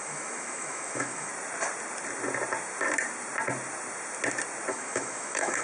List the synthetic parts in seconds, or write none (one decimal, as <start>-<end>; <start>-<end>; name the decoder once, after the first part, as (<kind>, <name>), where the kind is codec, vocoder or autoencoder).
0.0-1.3 (autoencoder, DAC-VAE); 4.7-5.6